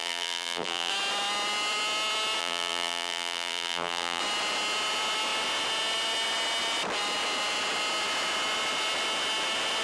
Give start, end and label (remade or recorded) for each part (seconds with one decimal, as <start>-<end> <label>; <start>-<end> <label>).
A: 0.0-0.9 remade; 0.9-2.4 recorded; 2.4-4.2 remade; 4.2-9.8 recorded